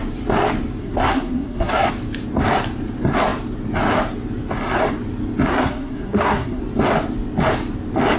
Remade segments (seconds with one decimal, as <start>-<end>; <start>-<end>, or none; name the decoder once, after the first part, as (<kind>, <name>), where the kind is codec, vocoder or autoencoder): 0.8-1.9 (codec, SNAC); 5.5-6.6